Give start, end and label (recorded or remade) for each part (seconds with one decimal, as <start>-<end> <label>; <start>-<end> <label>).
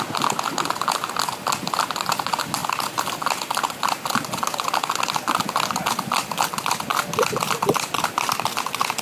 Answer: 0.0-9.0 recorded